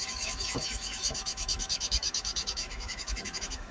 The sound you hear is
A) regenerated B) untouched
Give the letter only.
A